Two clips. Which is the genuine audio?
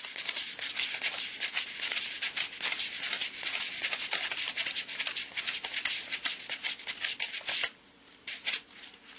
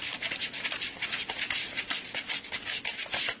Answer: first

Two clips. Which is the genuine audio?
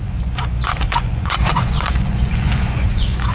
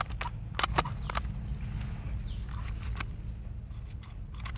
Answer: second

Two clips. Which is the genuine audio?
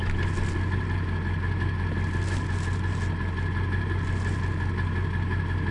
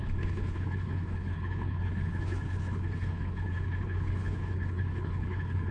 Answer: first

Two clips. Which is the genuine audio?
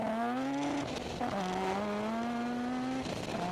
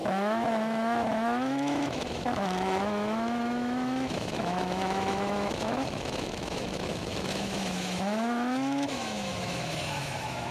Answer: first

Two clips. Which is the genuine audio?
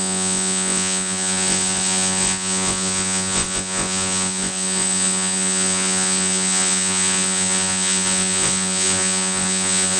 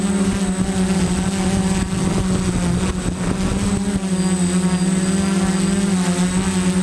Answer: second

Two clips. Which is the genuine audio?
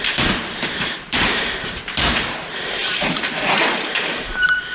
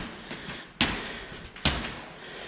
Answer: second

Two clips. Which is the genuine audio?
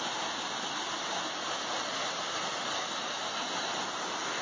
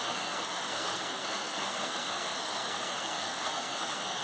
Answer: first